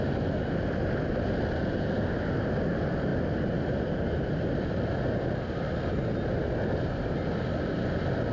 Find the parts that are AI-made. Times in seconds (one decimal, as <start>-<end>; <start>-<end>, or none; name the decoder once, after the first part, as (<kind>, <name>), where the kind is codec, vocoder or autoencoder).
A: none